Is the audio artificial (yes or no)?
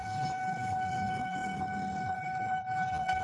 yes